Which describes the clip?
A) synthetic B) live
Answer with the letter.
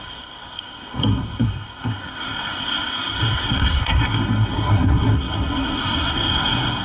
A